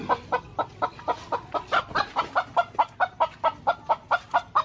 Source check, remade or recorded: recorded